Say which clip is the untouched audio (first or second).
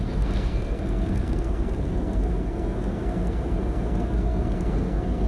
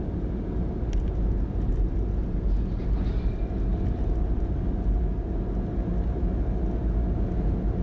second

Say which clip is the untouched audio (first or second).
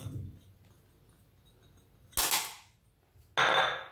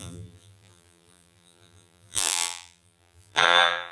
first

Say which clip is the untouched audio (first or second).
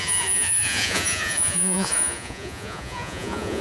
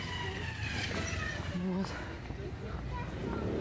second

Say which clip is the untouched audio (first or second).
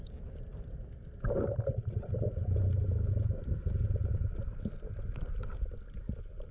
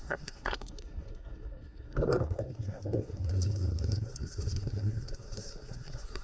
first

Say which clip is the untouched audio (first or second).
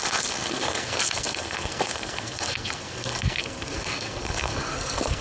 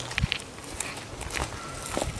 second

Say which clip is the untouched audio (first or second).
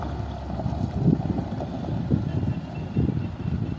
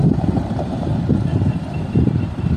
first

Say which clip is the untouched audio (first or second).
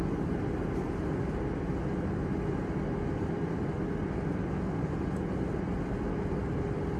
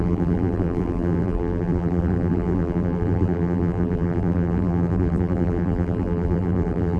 first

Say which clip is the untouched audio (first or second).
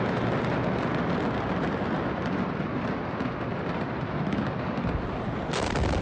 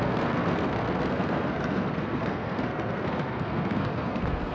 first